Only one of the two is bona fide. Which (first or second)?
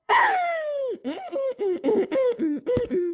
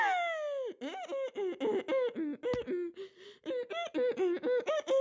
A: second